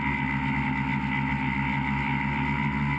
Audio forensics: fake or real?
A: real